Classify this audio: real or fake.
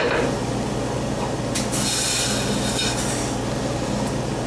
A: real